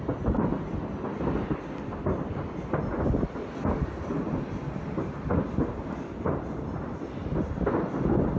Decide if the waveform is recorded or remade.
recorded